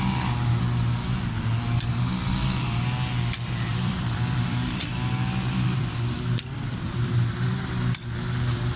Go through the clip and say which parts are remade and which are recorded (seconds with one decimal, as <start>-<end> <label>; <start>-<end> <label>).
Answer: 0.0-3.7 recorded; 3.7-7.5 remade; 7.5-8.8 recorded